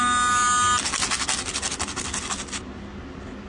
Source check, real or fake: real